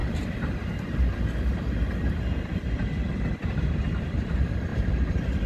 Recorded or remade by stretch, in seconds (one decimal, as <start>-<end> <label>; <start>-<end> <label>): 0.0-3.3 recorded; 3.3-5.5 remade